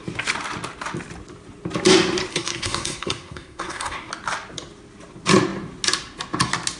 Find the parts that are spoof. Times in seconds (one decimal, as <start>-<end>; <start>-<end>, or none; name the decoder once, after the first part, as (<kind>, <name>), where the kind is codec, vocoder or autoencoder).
2.3-4.1 (codec, SNAC)

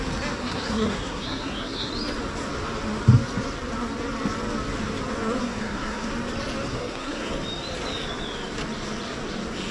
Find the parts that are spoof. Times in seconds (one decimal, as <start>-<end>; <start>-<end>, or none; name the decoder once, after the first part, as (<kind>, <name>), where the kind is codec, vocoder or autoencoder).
0.4-1.9 (codec, SNAC); 5.4-6.1; 6.7-7.3